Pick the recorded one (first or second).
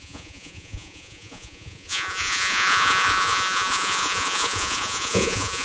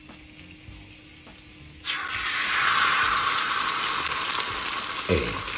second